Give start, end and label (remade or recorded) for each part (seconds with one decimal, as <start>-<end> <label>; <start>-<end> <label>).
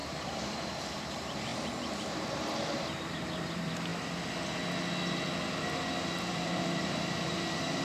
0.0-1.5 remade; 1.5-2.2 recorded; 2.2-3.9 remade; 3.9-6.3 recorded; 6.3-7.8 remade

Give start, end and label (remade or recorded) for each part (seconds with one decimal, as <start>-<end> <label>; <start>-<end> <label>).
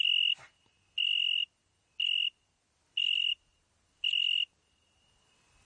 0.0-5.6 recorded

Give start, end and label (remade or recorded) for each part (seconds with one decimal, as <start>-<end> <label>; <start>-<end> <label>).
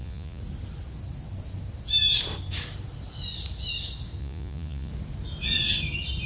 0.0-0.4 remade; 0.4-4.2 recorded; 4.2-4.9 remade; 4.9-6.3 recorded